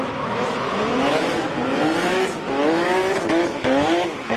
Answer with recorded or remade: remade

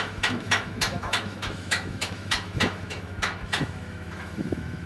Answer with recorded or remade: remade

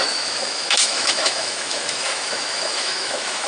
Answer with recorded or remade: remade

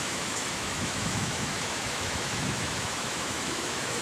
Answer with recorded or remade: remade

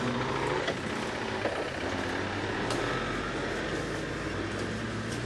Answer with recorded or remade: recorded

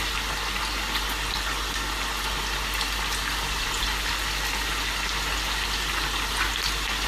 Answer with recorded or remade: recorded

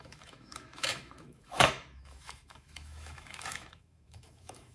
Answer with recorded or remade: remade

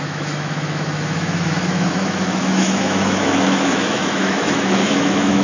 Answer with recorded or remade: remade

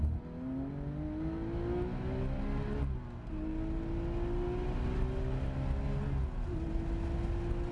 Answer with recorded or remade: recorded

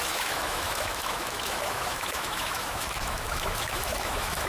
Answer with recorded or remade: remade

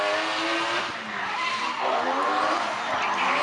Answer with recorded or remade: recorded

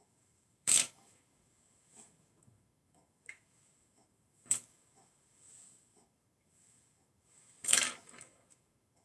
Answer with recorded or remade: remade